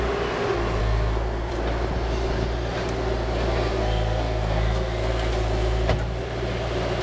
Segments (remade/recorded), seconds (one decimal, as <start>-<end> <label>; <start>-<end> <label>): 0.0-0.8 recorded; 0.8-1.5 remade; 1.5-3.7 recorded; 3.7-5.3 remade; 5.3-7.0 recorded